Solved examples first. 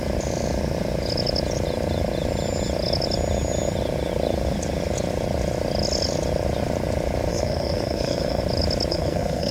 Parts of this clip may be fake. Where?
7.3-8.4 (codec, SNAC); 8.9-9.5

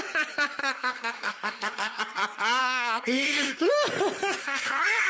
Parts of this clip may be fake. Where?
0.6-2.0 (codec, SNAC); 2.6-3.7; 4.4-5.1

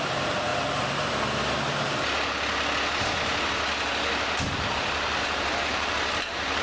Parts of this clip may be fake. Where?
0.0-0.5 (vocoder, BigVGAN v2); 4.5-6.6

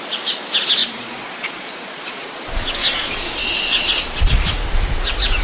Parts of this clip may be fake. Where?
0.8-2.4 (vocoder, Vocos); 2.8-4.4

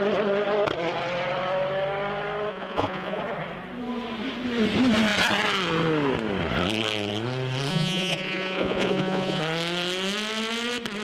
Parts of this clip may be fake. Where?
2.5-3.2 (vocoder, Vocos); 7.7-9.4

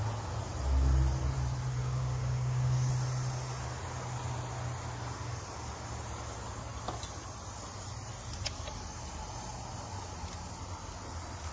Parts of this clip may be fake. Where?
1.8-2.9 (codec, DAC)

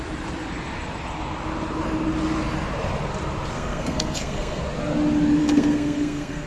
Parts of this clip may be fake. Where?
3.5-4.6 (codec, SNAC); 5.4-6.5

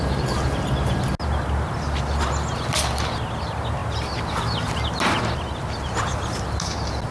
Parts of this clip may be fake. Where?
none